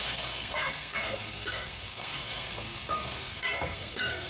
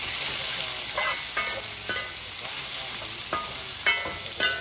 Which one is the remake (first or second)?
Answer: first